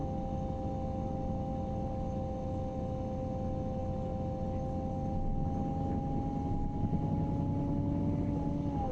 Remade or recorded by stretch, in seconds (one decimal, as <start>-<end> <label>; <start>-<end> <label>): 0.0-8.9 recorded